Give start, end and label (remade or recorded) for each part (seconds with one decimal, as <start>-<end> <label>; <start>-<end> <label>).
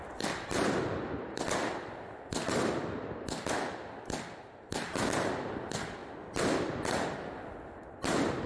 0.0-8.5 recorded